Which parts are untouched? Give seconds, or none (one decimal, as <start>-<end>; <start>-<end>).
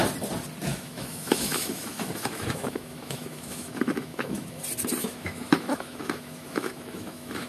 0.0-0.7; 4.6-5.0